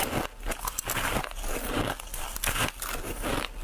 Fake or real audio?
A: real